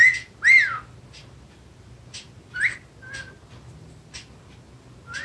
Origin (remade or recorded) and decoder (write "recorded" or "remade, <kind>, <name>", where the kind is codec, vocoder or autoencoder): recorded